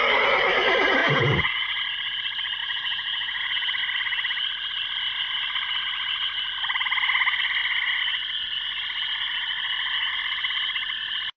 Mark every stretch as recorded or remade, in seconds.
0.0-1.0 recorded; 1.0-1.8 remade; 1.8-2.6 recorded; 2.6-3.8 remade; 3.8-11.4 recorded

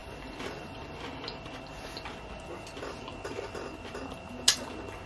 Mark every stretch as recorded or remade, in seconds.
0.0-5.1 recorded

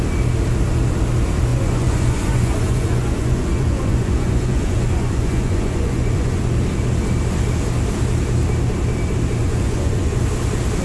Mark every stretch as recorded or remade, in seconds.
0.0-1.5 recorded; 1.5-6.4 remade; 6.4-9.4 recorded; 9.4-10.2 remade; 10.2-10.8 recorded

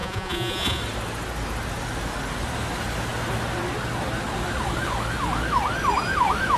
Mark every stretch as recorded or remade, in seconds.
0.0-0.8 remade; 0.8-6.6 recorded

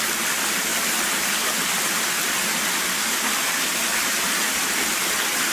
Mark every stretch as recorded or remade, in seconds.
0.0-5.5 recorded

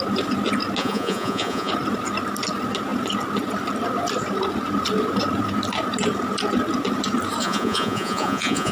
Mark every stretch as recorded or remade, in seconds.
0.0-0.8 recorded; 0.8-1.7 remade; 1.7-7.4 recorded; 7.4-8.7 remade

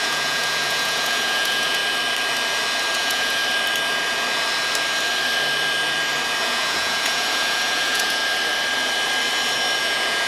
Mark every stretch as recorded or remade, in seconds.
0.0-1.8 remade; 1.8-2.9 recorded; 2.9-3.4 remade; 3.4-6.4 recorded; 6.4-8.2 remade; 8.2-9.8 recorded; 9.8-10.3 remade

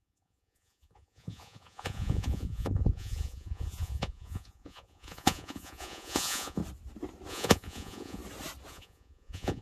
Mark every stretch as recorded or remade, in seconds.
0.0-6.6 remade; 6.6-7.3 recorded; 7.3-8.2 remade; 8.2-8.7 recorded; 8.7-9.6 remade